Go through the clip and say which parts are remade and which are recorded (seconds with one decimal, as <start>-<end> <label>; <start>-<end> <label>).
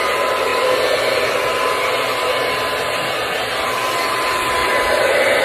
0.0-4.6 recorded; 4.6-5.4 remade